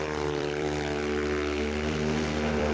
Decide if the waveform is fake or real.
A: fake